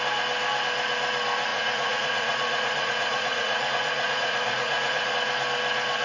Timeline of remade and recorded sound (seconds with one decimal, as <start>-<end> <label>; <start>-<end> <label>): 0.0-1.5 recorded; 1.5-5.1 remade; 5.1-6.0 recorded